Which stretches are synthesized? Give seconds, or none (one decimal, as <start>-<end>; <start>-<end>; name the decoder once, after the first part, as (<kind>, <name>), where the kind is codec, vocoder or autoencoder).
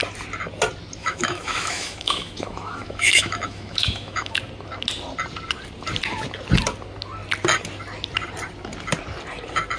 1.0-4.4 (autoencoder, DAC-VAE)